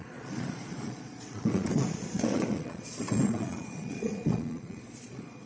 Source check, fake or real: fake